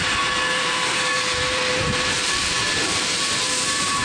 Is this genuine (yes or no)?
no